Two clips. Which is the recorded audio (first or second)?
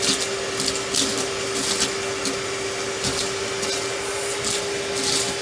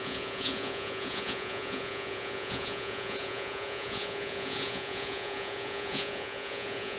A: first